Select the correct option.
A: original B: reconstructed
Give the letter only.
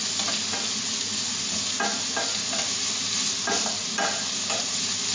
A